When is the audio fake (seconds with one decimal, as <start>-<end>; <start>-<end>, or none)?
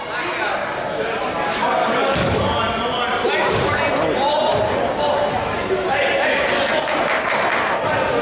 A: 1.8-2.4